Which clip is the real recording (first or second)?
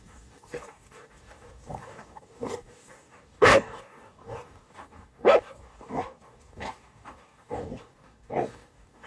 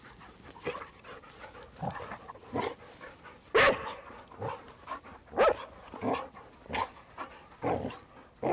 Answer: second